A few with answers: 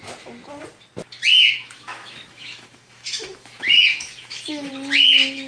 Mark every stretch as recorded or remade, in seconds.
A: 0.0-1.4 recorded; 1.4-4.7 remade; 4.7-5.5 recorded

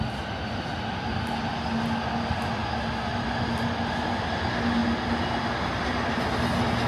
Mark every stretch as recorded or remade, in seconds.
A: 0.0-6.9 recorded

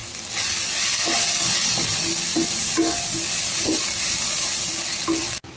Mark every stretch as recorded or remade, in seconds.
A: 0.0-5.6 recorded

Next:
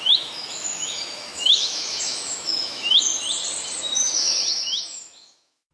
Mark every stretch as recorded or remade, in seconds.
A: 0.0-3.1 remade; 3.1-3.8 recorded; 3.8-5.7 remade